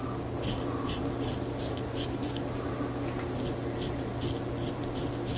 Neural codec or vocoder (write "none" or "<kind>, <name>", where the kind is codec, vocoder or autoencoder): none